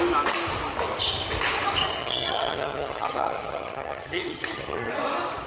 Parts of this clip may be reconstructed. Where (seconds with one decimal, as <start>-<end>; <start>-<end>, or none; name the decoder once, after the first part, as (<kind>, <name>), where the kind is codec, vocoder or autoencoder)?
2.0-4.9 (vocoder, HiFi-GAN)